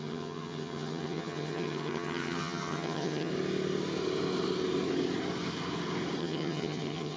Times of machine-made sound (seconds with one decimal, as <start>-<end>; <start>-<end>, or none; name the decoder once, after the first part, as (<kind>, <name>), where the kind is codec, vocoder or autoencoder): 0.0-3.3 (vocoder, HiFi-GAN); 6.2-7.2